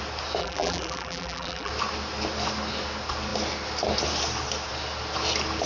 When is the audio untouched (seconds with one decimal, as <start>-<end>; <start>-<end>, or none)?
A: 0.0-0.4; 1.7-5.7